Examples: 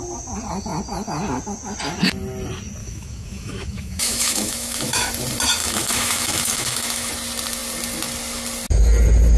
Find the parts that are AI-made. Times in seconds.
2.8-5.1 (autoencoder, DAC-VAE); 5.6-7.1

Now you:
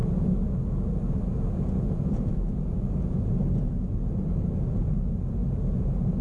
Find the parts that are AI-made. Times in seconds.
0.0-3.3 (vocoder, Vocos)

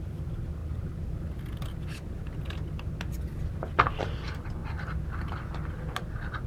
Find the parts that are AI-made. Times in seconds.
none

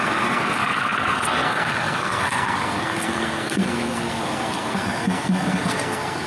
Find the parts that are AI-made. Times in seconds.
0.0-6.3 (codec, SNAC)